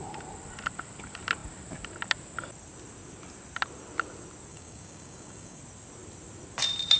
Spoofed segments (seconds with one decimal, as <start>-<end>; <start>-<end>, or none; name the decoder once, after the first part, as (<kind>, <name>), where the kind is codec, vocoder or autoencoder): 4.5-5.6 (codec, DAC)